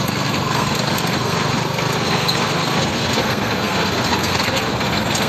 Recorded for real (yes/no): no